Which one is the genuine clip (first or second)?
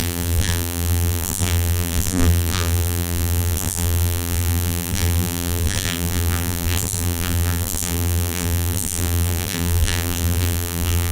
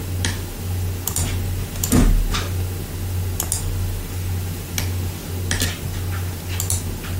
second